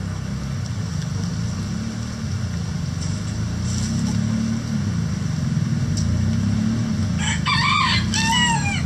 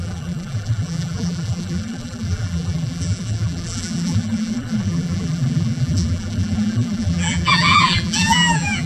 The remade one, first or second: second